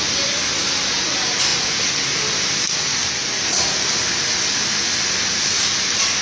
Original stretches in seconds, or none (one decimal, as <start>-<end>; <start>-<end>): 0.0-6.2